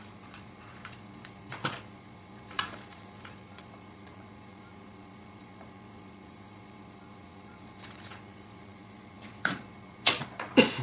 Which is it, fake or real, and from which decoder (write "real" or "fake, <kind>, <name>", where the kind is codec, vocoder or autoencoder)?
fake, vocoder, Vocos